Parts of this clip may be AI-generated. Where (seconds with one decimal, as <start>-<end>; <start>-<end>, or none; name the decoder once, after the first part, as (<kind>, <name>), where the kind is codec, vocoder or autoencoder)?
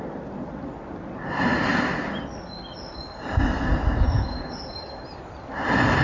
none